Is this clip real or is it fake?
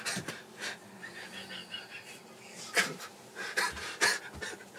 real